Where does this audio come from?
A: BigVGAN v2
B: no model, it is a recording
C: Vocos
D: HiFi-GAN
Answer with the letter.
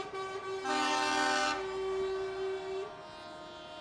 B